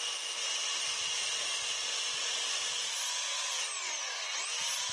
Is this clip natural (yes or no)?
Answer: yes